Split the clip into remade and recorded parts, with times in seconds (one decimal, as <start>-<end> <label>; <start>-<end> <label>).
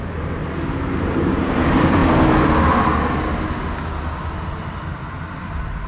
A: 0.0-0.4 remade; 0.4-1.0 recorded; 1.0-2.0 remade; 2.0-5.5 recorded; 5.5-5.9 remade